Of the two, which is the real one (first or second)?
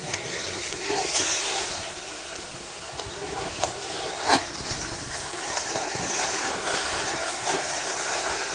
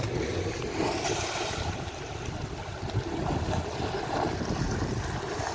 second